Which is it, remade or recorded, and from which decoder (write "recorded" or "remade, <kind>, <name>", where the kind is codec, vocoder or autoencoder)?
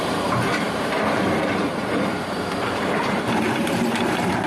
remade, vocoder, BigVGAN v2